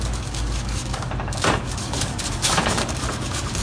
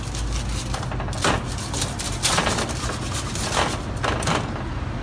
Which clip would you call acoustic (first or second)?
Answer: second